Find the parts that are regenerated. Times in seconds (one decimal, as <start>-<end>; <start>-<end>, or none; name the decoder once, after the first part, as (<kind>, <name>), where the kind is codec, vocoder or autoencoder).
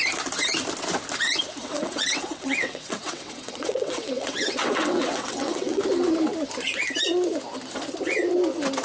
1.6-5.8 (vocoder, WaveNeXt)